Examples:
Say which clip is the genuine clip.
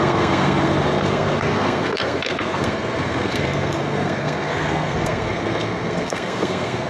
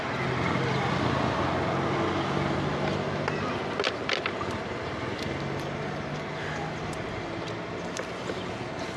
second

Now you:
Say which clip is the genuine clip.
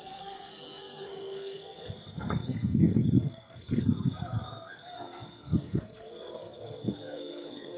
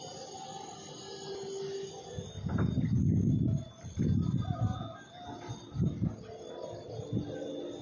second